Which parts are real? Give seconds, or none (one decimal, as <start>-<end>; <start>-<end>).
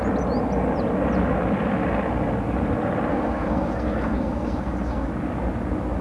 0.0-3.1; 5.1-6.0